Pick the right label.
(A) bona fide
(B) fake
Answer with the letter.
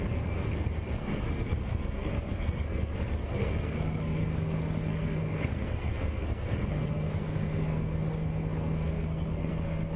B